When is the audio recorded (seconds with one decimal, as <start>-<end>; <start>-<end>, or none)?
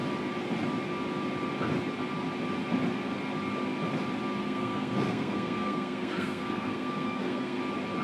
0.0-4.4; 7.6-8.0